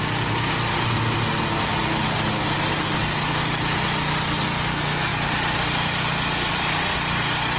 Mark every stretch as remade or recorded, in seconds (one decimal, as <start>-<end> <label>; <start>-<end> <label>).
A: 0.0-7.6 recorded